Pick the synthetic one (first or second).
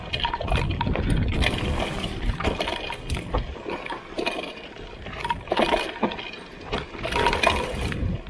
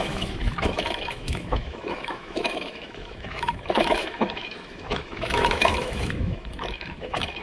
second